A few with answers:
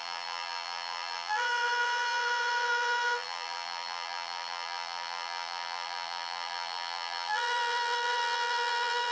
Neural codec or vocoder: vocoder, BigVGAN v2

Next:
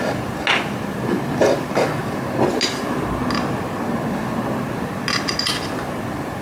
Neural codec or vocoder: none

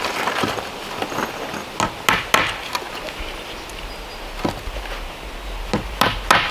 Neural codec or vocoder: none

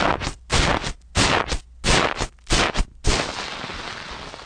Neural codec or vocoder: none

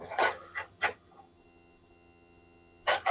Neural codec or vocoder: vocoder, HiFi-GAN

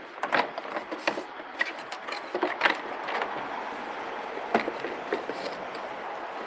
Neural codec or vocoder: none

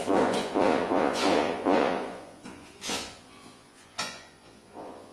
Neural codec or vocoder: vocoder, Vocos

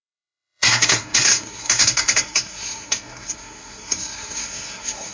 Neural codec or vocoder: codec, SNAC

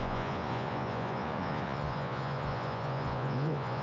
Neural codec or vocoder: vocoder, Vocos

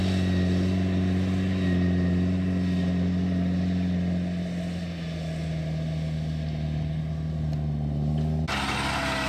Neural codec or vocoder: none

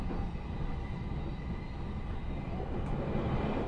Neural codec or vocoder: none